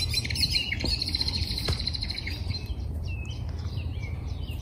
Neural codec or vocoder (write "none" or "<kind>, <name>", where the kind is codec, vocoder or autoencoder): vocoder, BigVGAN v2